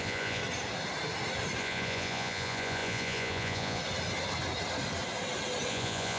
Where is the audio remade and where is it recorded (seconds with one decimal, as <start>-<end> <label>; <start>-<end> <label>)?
0.0-0.4 remade; 0.4-1.6 recorded; 1.6-3.8 remade; 3.8-5.7 recorded; 5.7-6.2 remade